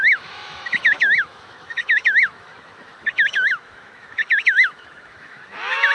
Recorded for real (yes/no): no